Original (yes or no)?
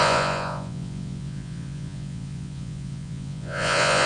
no